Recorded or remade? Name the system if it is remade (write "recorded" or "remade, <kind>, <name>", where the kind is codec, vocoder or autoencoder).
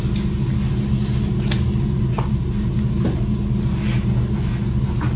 recorded